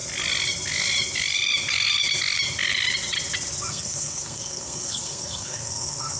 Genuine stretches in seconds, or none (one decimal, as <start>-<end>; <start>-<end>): 0.0-3.7